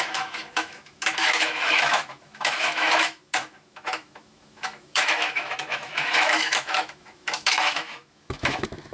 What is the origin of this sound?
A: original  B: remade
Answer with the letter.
B